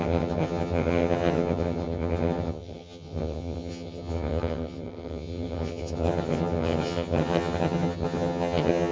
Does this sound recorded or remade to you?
remade